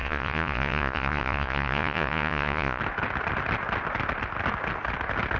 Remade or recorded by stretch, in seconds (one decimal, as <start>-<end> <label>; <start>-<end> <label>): 0.0-2.8 remade; 2.8-5.4 recorded